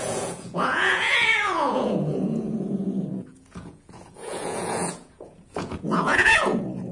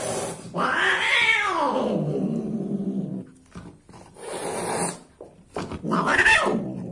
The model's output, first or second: first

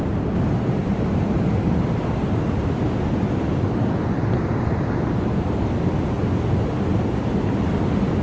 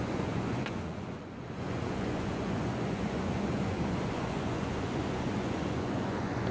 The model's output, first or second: second